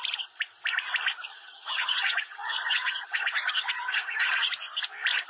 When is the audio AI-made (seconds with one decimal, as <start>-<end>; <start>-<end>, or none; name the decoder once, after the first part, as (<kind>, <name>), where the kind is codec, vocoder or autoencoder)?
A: 1.3-4.5 (vocoder, HiFi-GAN)